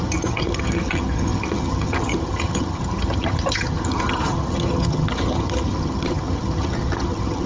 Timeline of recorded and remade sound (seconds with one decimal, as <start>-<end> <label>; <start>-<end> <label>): 0.0-7.5 remade